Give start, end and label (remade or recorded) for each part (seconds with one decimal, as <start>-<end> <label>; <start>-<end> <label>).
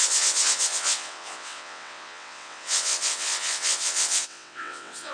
0.0-5.1 remade